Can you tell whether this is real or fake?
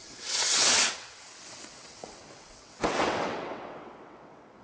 fake